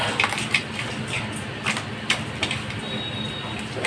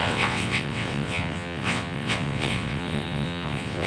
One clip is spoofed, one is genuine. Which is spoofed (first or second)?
second